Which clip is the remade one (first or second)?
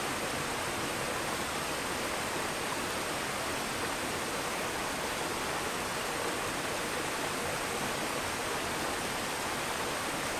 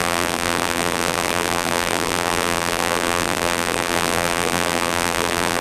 second